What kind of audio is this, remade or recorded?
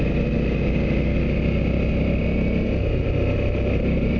recorded